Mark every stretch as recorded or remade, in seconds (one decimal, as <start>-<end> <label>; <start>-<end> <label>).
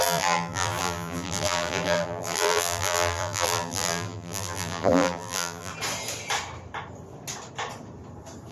0.0-5.7 remade; 5.7-8.5 recorded